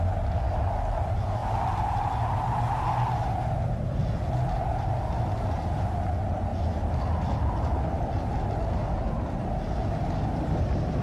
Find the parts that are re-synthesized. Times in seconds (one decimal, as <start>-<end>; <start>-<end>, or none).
none